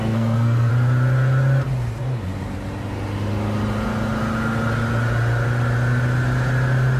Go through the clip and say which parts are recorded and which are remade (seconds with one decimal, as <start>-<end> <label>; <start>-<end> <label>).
0.0-0.7 remade; 0.7-7.0 recorded